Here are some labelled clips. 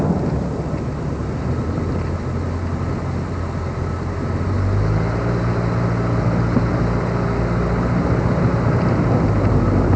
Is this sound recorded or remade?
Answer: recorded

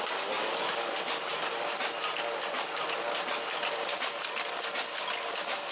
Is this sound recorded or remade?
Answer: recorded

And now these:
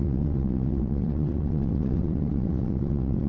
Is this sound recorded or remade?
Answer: remade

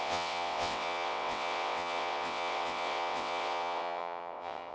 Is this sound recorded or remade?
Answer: remade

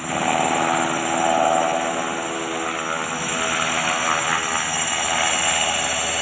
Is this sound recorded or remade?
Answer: recorded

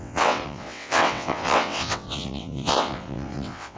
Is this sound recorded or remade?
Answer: remade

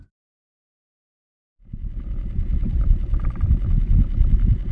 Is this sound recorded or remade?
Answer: recorded